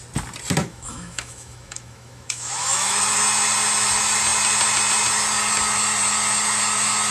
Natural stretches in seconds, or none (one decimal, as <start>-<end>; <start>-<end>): 0.0-0.6; 3.0-7.1